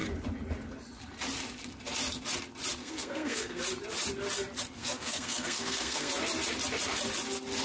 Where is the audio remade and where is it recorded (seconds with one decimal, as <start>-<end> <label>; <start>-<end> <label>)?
0.0-2.8 recorded; 2.8-3.6 remade; 3.6-4.8 recorded; 4.8-6.1 remade; 6.1-7.6 recorded